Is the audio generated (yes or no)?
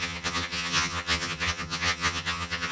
yes